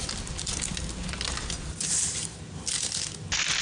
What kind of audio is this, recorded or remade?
recorded